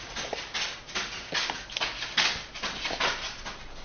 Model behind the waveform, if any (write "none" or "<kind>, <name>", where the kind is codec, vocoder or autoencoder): none